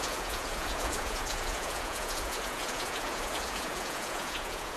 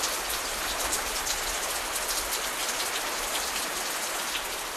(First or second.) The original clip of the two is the second